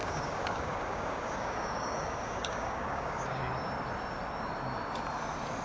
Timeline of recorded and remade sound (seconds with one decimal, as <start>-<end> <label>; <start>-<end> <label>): 0.0-3.4 remade; 3.4-5.6 recorded